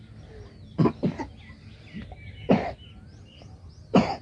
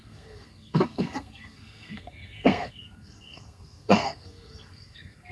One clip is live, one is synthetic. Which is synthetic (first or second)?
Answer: second